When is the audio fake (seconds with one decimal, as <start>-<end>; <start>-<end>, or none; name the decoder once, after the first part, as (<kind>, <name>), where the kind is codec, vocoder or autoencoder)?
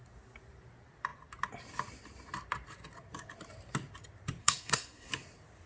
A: 4.4-5.1 (codec, SNAC)